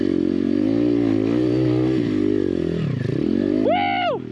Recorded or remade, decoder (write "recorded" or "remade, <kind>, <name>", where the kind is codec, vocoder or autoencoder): recorded